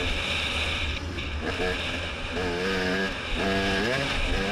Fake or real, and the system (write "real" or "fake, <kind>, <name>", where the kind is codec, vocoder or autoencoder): real